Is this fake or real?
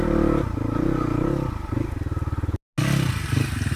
real